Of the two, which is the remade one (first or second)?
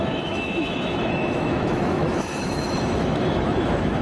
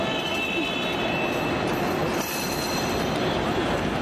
first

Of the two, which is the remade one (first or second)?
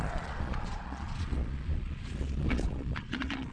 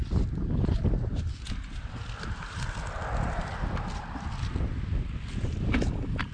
first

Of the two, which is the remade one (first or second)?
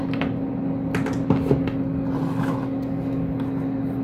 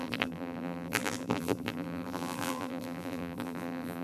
second